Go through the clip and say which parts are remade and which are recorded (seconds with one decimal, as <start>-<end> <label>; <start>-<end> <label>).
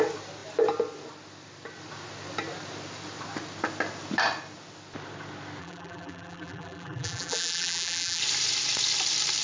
0.0-5.6 recorded; 5.6-8.2 remade; 8.2-9.4 recorded